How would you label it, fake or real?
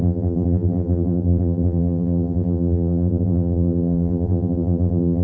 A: fake